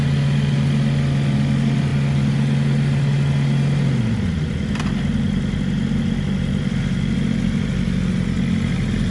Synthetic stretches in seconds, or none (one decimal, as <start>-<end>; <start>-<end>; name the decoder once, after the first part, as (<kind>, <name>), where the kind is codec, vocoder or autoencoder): none